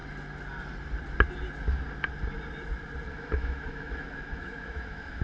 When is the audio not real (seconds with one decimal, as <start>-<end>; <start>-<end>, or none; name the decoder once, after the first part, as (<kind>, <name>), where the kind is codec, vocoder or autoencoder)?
3.1-5.2 (autoencoder, DAC-VAE)